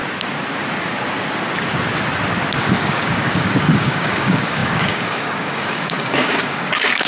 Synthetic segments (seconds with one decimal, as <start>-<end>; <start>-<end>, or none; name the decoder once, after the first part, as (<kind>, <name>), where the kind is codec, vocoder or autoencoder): 2.6-7.1 (codec, DAC)